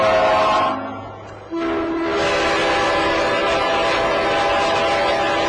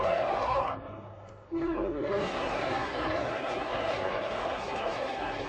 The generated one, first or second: second